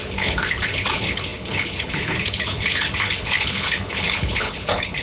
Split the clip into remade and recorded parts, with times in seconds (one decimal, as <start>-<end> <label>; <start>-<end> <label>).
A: 0.0-5.0 remade